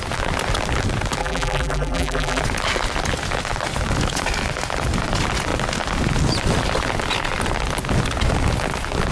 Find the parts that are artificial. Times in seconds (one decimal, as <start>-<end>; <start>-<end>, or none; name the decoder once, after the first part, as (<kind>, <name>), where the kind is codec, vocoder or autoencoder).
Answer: 1.2-2.4 (vocoder, BigVGAN v2)

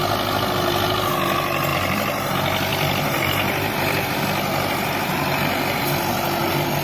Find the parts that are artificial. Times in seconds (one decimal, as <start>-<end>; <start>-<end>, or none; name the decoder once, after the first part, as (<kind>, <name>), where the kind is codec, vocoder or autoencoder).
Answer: 1.7-2.3 (vocoder, BigVGAN v2); 2.7-5.4

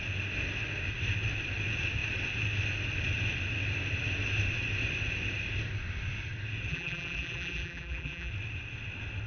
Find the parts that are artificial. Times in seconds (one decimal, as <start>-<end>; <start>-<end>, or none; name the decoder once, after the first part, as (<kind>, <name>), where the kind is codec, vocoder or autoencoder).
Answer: 6.7-8.3 (vocoder, BigVGAN v2)

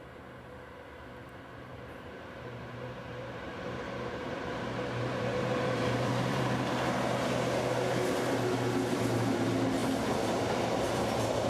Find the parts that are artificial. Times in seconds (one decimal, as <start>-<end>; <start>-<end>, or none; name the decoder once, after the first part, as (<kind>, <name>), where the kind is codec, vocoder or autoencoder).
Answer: 1.7-6.4 (vocoder, BigVGAN v2)

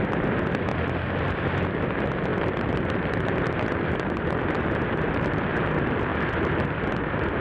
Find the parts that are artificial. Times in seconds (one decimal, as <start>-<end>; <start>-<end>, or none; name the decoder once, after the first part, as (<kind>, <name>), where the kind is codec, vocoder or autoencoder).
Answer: 0.7-1.4 (vocoder, BigVGAN v2); 2.3-5.5; 6.1-7.4

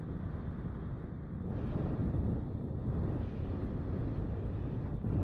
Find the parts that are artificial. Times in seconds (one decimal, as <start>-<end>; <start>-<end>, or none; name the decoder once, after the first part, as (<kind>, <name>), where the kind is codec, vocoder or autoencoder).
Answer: none